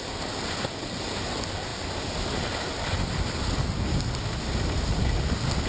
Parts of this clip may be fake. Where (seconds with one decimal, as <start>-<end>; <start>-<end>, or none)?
none